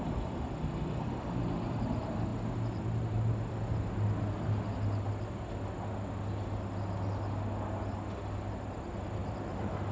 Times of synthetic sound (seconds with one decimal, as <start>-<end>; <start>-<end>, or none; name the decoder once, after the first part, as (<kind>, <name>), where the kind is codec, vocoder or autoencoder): none

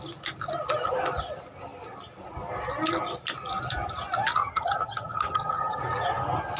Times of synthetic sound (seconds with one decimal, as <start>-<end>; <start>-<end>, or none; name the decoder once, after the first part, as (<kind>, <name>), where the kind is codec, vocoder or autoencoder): 4.4-5.8 (vocoder, HiFi-GAN)

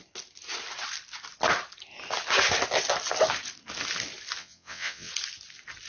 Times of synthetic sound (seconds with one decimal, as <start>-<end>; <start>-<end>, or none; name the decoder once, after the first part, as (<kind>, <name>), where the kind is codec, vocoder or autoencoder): 4.4-5.1 (vocoder, WaveNeXt)